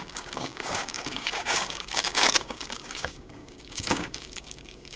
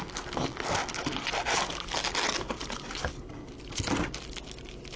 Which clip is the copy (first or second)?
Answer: first